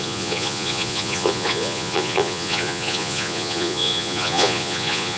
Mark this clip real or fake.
fake